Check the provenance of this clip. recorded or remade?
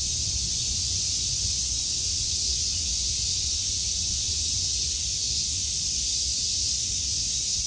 remade